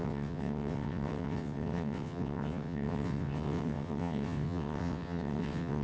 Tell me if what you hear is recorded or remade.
remade